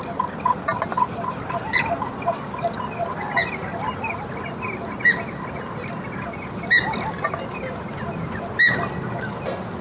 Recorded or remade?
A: recorded